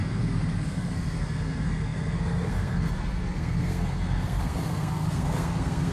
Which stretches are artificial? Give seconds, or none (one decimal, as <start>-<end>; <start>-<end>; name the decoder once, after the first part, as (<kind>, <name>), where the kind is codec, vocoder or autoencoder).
0.0-5.9 (codec, SNAC)